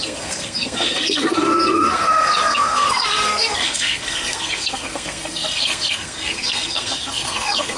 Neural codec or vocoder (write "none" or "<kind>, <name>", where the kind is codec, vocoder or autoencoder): codec, SNAC